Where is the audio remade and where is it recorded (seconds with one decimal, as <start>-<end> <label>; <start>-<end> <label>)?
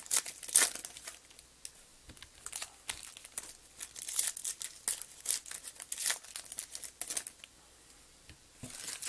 0.0-9.1 recorded